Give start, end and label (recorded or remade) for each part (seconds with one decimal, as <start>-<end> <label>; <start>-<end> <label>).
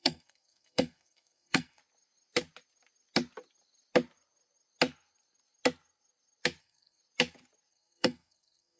0.0-1.8 remade; 1.8-6.6 recorded; 6.6-7.0 remade; 7.0-7.7 recorded; 7.7-8.8 remade